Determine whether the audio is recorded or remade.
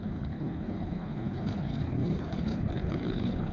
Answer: remade